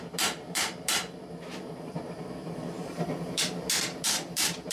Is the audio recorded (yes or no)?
no